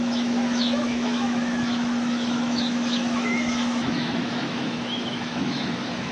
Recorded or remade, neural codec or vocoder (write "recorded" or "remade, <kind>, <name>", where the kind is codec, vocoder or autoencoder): remade, autoencoder, DAC-VAE